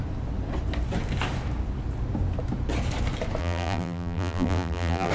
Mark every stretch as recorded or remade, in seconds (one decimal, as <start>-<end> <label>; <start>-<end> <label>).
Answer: 0.0-3.4 recorded; 3.4-5.1 remade